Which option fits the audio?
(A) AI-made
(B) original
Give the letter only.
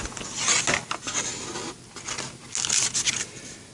B